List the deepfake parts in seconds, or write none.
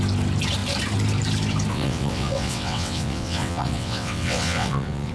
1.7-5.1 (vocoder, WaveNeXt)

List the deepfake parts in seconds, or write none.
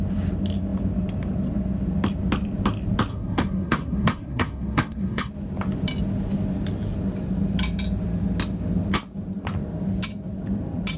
3.1-5.3 (codec, SNAC)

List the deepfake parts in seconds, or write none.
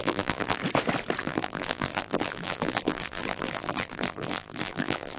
0.0-0.6 (vocoder, BigVGAN v2); 1.2-5.2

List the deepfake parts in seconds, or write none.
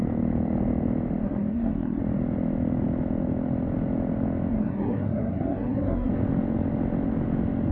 1.2-2.0 (codec, SNAC); 4.5-6.1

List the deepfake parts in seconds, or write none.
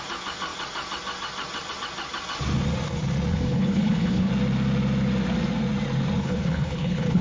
3.3-4.3 (codec, HILCodec); 6.2-7.2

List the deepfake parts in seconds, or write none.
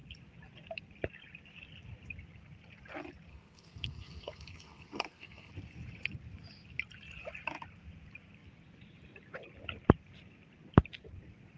3.3-5.5 (codec, SNAC)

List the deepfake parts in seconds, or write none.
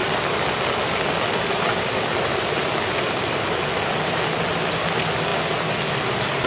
none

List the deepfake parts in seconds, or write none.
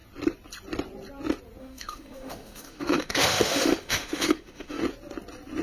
1.6-4.8 (autoencoder, DAC-VAE)